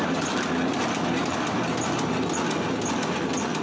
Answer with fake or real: real